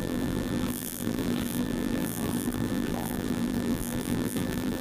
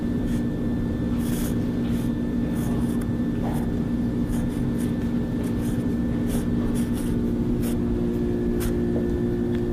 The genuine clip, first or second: second